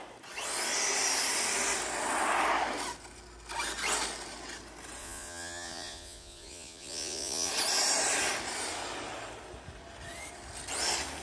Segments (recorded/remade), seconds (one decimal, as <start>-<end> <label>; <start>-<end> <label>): 0.0-5.0 recorded; 5.0-7.5 remade; 7.5-11.2 recorded